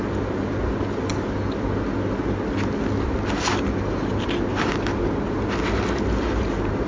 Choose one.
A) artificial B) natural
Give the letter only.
B